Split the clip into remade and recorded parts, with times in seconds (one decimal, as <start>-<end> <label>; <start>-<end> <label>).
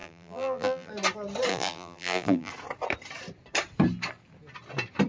0.0-0.9 remade; 0.9-1.5 recorded; 1.5-2.5 remade; 2.5-5.1 recorded